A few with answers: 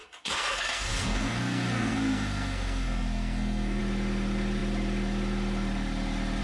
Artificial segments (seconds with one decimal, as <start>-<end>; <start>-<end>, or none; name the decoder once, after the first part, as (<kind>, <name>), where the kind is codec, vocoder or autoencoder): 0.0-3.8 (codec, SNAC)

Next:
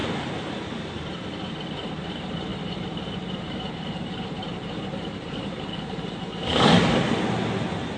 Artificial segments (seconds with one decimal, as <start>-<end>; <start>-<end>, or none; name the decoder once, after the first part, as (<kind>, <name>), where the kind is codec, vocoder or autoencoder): 0.0-1.1 (vocoder, BigVGAN v2); 2.5-6.8

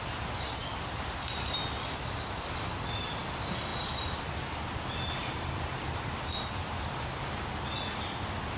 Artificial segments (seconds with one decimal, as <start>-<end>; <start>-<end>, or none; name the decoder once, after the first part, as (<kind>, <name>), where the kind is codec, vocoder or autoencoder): 0.6-3.2 (vocoder, BigVGAN v2); 5.2-7.4